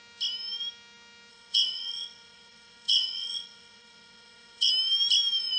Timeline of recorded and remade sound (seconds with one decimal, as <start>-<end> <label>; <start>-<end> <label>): 0.0-1.3 recorded; 1.3-4.7 remade; 4.7-5.6 recorded